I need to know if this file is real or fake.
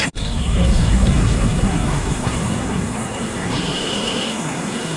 fake